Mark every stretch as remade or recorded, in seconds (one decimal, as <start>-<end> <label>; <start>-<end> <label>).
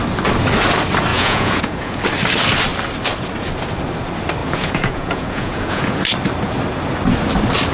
0.0-1.1 recorded; 1.1-2.0 remade; 2.0-4.4 recorded; 4.4-6.0 remade; 6.0-7.7 recorded